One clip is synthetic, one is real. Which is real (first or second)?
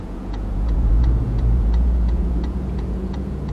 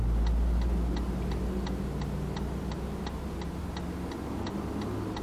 second